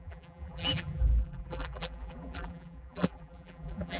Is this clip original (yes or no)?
no